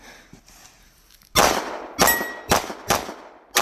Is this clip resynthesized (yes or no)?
no